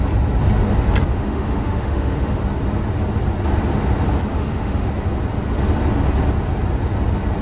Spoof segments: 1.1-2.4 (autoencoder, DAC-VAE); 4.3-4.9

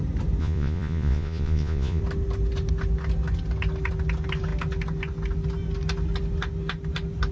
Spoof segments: 0.4-2.0 (vocoder, Vocos)

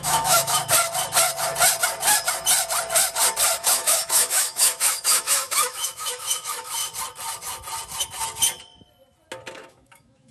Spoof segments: 0.0-0.6 (autoencoder, DAC-VAE); 3.6-6.8; 9.5-10.3